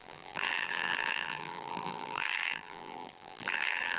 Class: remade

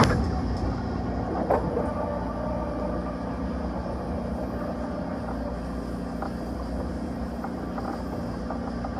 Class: recorded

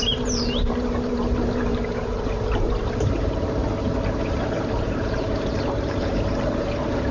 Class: remade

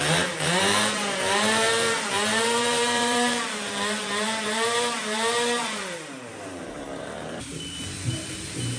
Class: remade